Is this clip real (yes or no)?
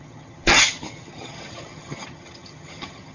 no